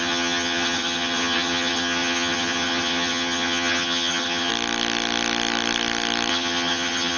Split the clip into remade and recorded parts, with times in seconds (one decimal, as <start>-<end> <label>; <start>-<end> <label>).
0.0-4.5 remade; 4.5-6.3 recorded; 6.3-7.2 remade